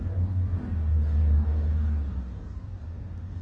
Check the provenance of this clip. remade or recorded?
remade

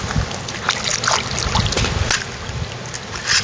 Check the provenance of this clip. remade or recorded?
recorded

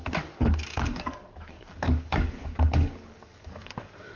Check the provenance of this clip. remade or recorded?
remade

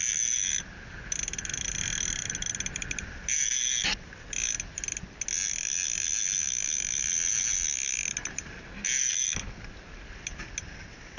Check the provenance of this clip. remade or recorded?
recorded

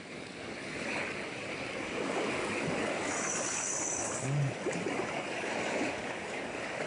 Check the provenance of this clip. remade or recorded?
remade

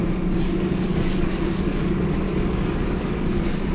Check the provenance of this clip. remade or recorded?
remade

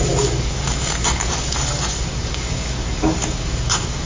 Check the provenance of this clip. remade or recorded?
remade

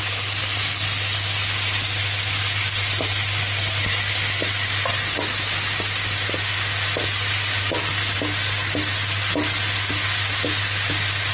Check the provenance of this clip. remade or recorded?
recorded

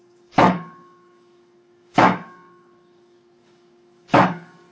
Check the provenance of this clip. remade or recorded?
remade